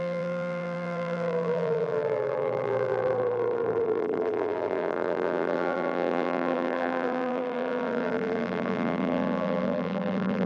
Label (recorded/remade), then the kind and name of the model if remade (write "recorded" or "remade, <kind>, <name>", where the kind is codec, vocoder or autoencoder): remade, vocoder, BigVGAN v2